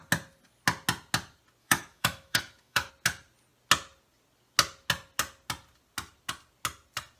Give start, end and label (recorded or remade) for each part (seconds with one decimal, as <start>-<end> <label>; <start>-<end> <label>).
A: 0.0-1.6 recorded; 1.6-2.9 remade; 2.9-7.2 recorded